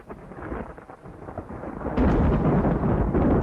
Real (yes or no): yes